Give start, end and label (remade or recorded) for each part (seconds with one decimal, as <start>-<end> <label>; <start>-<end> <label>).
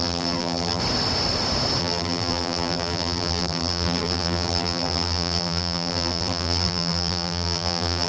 0.0-0.8 remade; 0.8-1.8 recorded; 1.8-8.1 remade